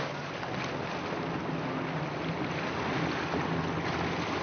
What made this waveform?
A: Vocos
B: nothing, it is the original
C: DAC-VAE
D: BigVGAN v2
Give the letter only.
B